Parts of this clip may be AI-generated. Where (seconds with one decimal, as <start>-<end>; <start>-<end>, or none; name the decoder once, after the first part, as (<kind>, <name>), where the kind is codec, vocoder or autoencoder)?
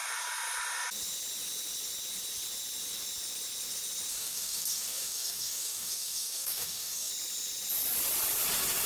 4.1-7.1 (codec, DAC)